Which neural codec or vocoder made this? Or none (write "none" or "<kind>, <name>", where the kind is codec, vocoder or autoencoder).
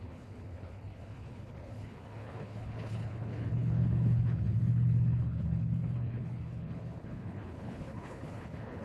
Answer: codec, HILCodec